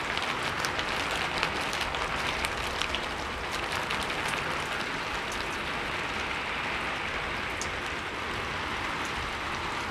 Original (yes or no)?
yes